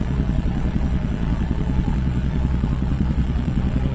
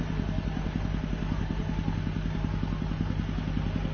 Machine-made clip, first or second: first